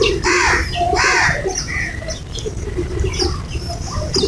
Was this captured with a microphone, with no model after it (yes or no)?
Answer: no